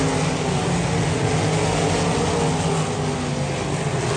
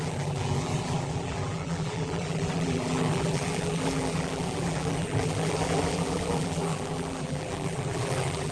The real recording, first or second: first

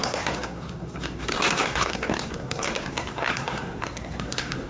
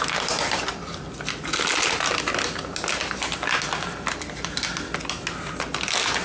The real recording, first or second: second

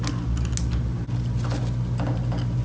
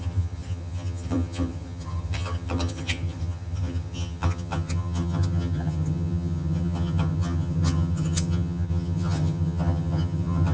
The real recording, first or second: first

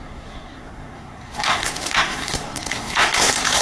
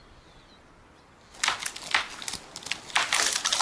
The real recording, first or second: second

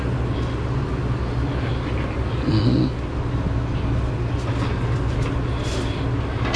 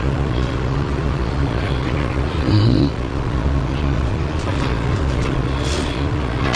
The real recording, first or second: first